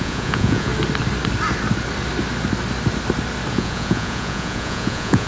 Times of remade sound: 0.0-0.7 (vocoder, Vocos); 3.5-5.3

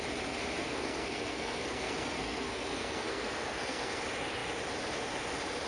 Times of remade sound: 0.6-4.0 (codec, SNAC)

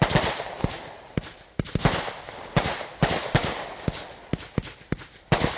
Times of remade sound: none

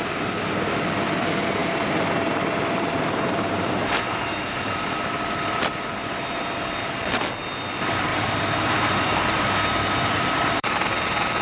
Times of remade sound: 1.6-6.7 (vocoder, BigVGAN v2); 8.1-10.9

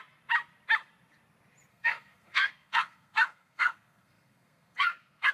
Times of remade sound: 1.7-5.3 (codec, SNAC)

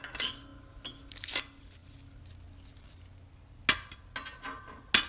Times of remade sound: none

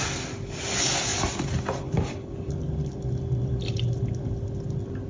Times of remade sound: none

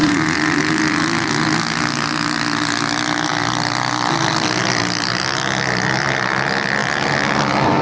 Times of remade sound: none